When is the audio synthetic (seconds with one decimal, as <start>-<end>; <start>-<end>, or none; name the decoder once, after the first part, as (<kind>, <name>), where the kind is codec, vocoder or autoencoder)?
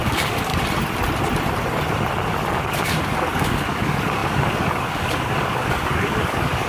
0.0-0.5 (codec, DAC); 2.7-6.7